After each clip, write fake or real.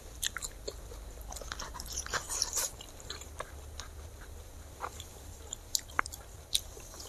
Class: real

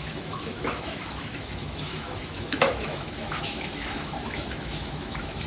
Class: fake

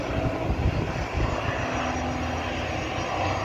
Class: real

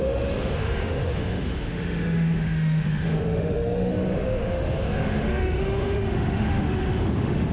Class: fake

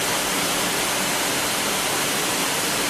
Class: real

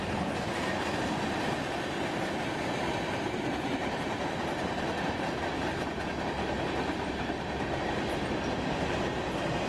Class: real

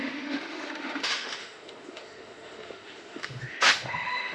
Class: fake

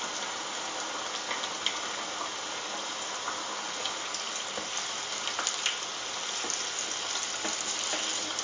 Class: real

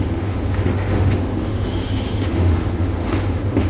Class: fake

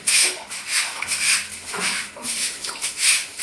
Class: fake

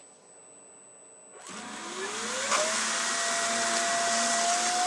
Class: real